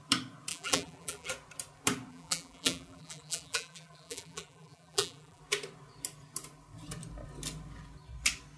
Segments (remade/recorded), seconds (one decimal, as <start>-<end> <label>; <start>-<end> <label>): 0.0-0.5 recorded; 0.5-1.3 remade; 1.3-2.1 recorded; 2.1-5.4 remade; 5.4-8.6 recorded